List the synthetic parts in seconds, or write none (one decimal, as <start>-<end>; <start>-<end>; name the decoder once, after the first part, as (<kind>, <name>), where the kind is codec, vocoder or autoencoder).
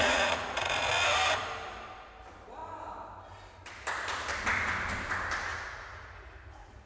0.0-0.9 (vocoder, Vocos); 5.5-6.9